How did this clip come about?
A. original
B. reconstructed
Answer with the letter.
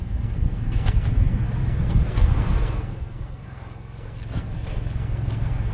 B